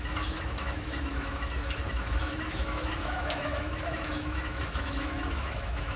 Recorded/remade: remade